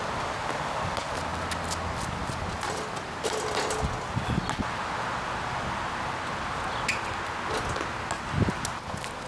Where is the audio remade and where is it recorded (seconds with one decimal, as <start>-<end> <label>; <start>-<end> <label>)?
0.0-9.3 recorded